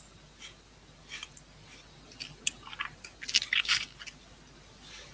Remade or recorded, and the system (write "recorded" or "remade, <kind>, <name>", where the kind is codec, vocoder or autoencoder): recorded